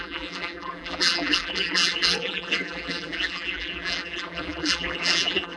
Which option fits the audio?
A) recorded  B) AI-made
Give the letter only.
B